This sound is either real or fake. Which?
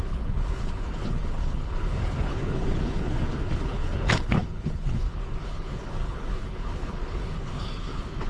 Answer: fake